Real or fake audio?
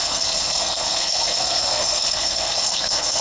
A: fake